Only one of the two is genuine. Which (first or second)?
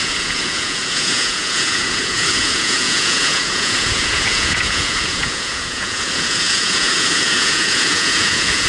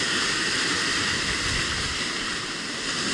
second